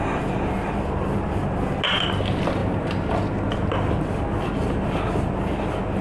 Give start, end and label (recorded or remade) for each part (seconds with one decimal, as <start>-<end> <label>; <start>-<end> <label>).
0.0-2.6 recorded; 2.6-3.2 remade; 3.2-6.0 recorded